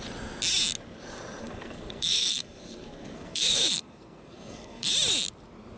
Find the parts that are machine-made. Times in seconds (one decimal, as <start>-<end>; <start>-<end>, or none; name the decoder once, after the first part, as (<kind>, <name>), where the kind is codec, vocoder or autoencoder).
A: 1.4-4.9 (codec, SNAC)